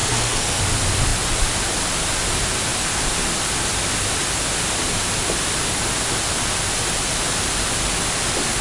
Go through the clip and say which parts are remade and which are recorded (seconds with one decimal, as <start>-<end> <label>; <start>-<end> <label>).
0.0-0.6 remade; 0.6-8.6 recorded